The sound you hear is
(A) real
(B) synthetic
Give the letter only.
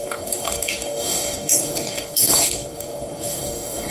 B